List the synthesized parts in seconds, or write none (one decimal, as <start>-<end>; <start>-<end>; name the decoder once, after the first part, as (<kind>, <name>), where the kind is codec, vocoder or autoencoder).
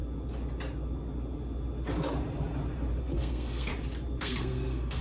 3.0-3.7 (codec, SNAC); 4.2-5.0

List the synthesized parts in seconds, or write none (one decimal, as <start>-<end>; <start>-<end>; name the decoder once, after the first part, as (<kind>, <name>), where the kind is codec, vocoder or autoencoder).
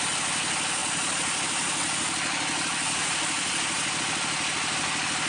none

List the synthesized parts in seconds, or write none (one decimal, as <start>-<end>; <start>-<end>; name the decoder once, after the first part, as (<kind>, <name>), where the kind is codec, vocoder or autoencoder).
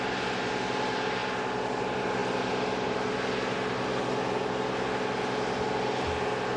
none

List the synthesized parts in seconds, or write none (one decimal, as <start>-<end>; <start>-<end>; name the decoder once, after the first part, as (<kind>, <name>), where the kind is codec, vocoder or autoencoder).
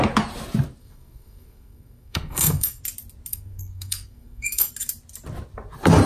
0.8-2.8 (codec, SNAC); 3.3-4.7